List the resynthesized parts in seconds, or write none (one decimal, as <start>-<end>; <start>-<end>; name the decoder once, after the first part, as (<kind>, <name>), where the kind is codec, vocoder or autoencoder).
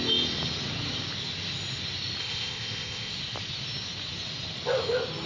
2.2-3.1 (codec, ZipCodec)